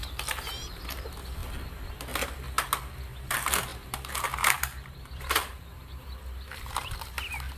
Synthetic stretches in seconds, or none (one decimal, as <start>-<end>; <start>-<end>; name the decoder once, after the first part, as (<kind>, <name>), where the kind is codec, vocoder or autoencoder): 0.0-0.8 (vocoder, BigVGAN v2); 3.7-6.2